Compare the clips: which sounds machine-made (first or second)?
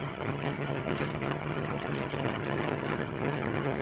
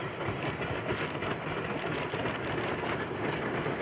first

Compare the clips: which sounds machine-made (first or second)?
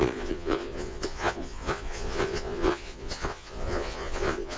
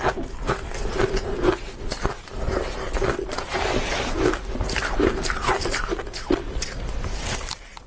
first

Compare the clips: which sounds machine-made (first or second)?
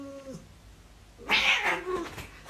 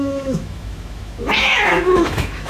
second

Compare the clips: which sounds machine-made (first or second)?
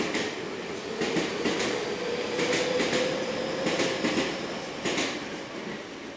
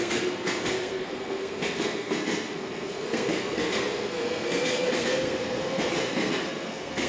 second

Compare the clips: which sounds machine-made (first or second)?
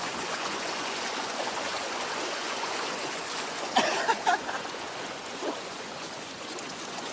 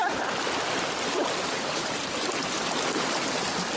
first